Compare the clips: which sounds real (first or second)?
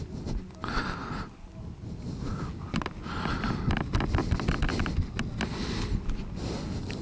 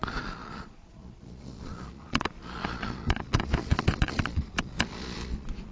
first